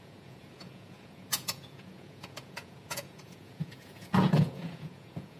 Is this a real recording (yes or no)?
no